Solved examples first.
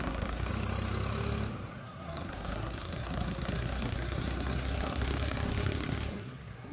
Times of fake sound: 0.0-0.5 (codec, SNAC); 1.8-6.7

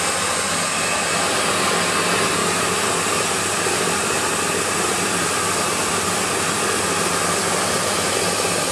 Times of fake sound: 0.0-8.7 (vocoder, BigVGAN v2)

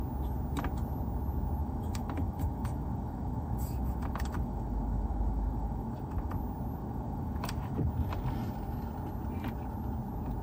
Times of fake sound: 1.6-6.3 (autoencoder, DAC-VAE); 6.8-7.9

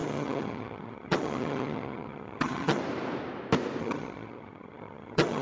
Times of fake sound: 0.0-2.8 (vocoder, HiFi-GAN); 3.8-5.4

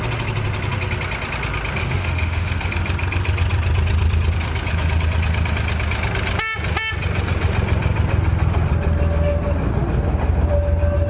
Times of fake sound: 1.8-2.7 (autoencoder, DAC-VAE)

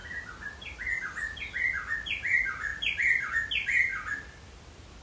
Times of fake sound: 2.7-3.3 (vocoder, BigVGAN v2); 3.9-5.0

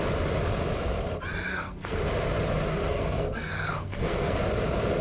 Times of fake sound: 1.5-2.0 (codec, SNAC); 2.7-4.4